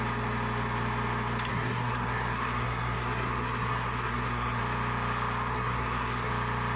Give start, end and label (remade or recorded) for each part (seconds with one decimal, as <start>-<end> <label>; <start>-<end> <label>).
0.0-1.5 recorded; 1.5-4.6 remade; 4.6-5.5 recorded; 5.5-6.3 remade; 6.3-6.8 recorded